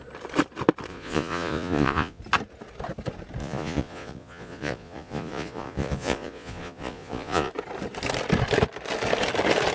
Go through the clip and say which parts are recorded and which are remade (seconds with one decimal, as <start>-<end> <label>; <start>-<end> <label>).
0.0-0.9 recorded; 0.9-2.2 remade; 2.2-3.4 recorded; 3.4-7.5 remade; 7.5-9.7 recorded